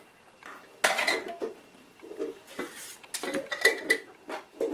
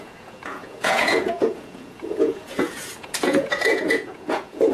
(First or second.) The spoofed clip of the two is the second